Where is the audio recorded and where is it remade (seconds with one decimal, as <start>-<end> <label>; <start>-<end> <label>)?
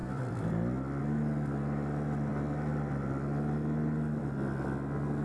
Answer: 0.0-5.2 recorded